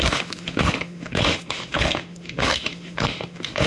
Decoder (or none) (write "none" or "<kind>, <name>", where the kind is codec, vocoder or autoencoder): autoencoder, DAC-VAE